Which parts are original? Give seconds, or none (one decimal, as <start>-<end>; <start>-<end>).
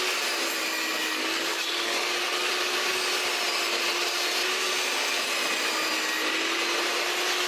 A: 0.0-0.8; 2.5-7.5